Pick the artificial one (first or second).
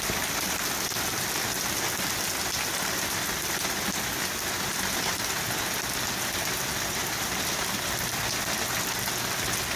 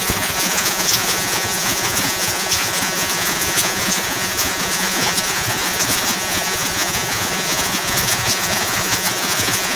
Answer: second